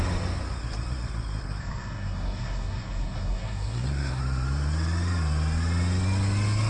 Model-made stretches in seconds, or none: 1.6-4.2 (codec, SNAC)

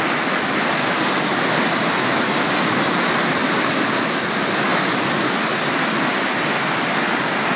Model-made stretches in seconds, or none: none

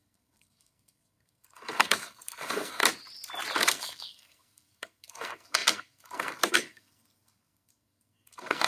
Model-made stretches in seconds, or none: 0.0-2.8 (codec, SNAC); 3.6-8.7

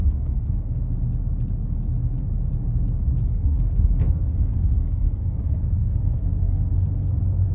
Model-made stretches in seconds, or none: 0.0-0.8 (codec, SNAC); 3.2-6.7

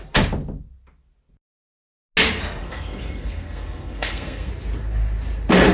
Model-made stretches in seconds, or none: 2.6-4.5 (codec, SNAC)

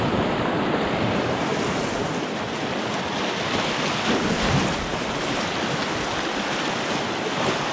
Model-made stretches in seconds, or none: none

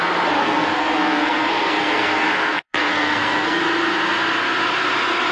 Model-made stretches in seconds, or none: 0.4-3.6 (codec, SNAC)

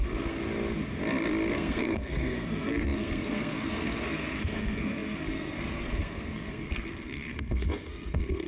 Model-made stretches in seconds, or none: 0.0-0.4 (codec, SNAC); 1.5-8.5